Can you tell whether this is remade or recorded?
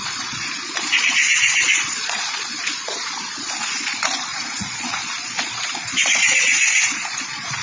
remade